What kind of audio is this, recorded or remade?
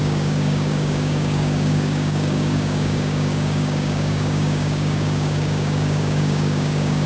remade